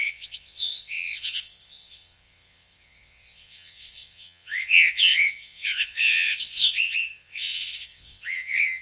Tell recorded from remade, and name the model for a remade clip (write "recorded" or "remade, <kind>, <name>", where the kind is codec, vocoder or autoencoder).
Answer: remade, vocoder, WaveNeXt